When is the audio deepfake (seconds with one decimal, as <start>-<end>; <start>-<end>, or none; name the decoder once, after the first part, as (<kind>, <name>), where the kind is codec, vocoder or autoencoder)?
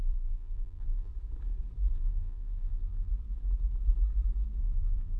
0.0-1.1 (vocoder, BigVGAN v2); 1.9-3.1; 4.6-5.2